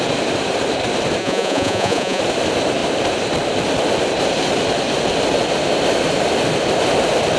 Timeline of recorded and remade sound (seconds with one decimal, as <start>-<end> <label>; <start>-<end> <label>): 0.0-1.2 recorded; 1.2-2.2 remade; 2.2-7.4 recorded